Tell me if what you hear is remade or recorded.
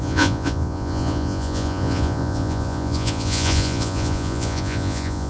remade